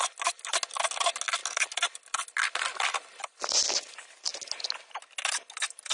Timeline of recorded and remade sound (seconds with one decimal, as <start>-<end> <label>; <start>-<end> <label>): 0.0-5.9 recorded